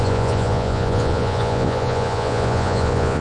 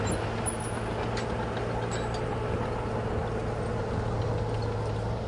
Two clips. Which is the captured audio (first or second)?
second